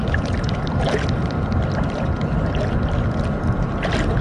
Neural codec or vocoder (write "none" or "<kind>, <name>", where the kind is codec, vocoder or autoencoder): none